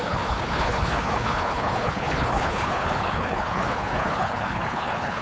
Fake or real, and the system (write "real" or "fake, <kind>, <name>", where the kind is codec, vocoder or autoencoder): fake, codec, HILCodec